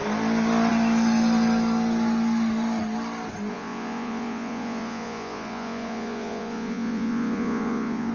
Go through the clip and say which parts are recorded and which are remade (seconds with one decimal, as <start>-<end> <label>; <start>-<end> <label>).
0.0-3.5 recorded; 3.5-8.1 remade